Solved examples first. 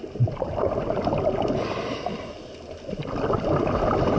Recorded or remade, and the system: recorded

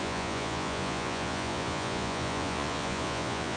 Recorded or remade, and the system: remade, vocoder, Vocos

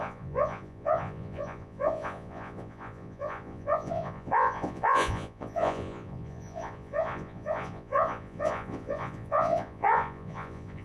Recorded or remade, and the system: remade, vocoder, Vocos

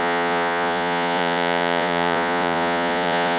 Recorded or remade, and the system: remade, vocoder, Vocos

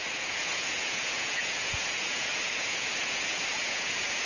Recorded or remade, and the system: remade, vocoder, Vocos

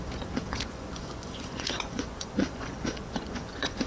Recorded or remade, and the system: remade, vocoder, Vocos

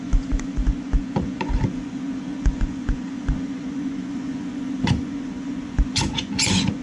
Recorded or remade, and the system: remade, vocoder, Vocos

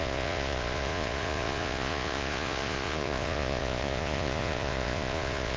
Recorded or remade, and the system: remade, vocoder, Vocos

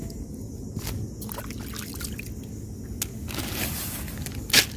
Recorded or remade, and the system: recorded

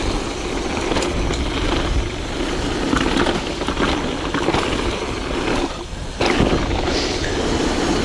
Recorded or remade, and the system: recorded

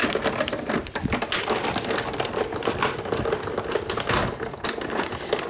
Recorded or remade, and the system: recorded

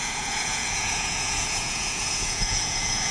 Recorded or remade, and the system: remade, vocoder, Vocos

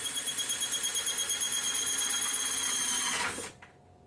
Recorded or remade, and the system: recorded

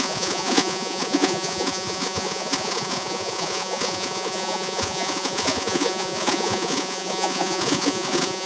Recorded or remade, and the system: remade, vocoder, Vocos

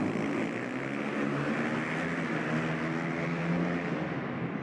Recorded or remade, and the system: recorded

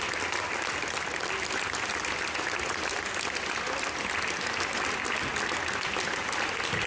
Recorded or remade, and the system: recorded